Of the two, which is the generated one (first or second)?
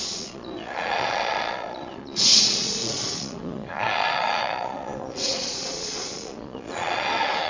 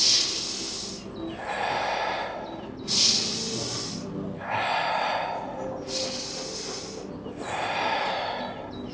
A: first